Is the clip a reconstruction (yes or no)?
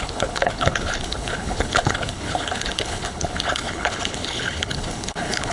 yes